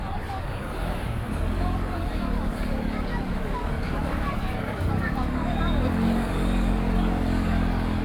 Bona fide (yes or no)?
no